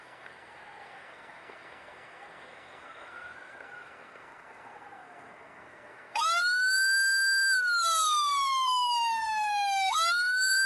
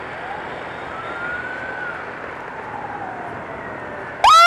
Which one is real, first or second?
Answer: second